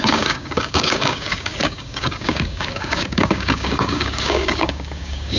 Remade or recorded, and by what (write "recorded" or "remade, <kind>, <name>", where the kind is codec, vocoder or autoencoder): remade, codec, DAC